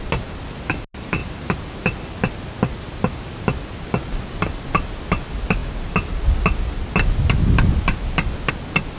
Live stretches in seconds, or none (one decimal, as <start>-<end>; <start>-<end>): 0.0-9.0